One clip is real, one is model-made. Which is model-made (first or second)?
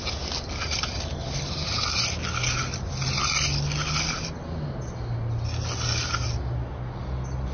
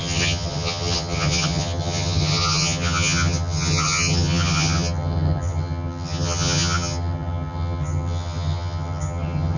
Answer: second